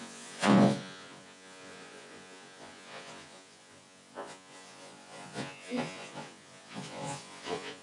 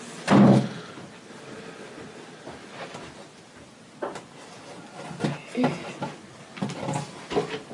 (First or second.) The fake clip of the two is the first